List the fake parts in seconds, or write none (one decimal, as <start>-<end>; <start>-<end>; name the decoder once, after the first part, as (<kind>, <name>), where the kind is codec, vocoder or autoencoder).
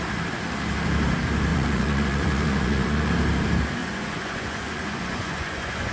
1.5-3.1 (vocoder, Vocos); 3.8-5.9